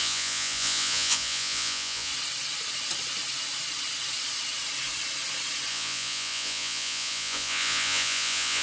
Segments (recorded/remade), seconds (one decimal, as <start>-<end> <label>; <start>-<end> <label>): 0.0-2.1 remade; 2.1-5.7 recorded; 5.7-8.6 remade